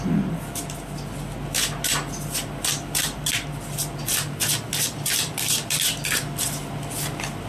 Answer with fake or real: real